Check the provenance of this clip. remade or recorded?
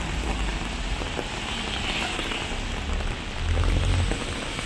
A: recorded